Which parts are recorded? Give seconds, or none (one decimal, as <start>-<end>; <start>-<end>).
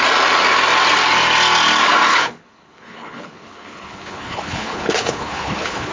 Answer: 0.0-2.1